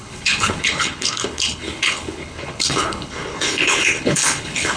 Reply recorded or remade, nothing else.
remade